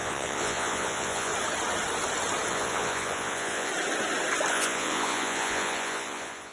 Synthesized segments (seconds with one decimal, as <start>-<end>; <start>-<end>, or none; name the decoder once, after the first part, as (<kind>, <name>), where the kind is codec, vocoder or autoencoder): 0.0-1.3 (vocoder, Vocos); 2.5-3.7; 4.5-6.5